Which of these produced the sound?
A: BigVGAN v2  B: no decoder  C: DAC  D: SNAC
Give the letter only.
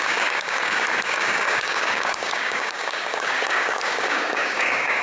C